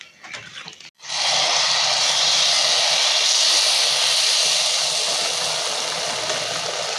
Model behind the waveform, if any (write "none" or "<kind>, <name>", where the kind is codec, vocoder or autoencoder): none